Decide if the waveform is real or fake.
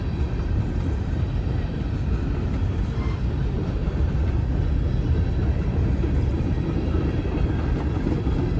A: real